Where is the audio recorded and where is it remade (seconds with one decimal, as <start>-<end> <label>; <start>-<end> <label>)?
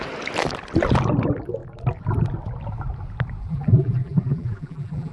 0.0-3.4 recorded; 3.4-5.1 remade